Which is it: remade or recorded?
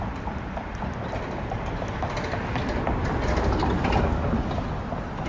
recorded